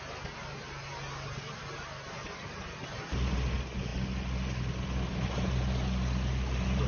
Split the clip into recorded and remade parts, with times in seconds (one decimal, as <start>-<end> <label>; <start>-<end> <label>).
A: 0.0-6.9 recorded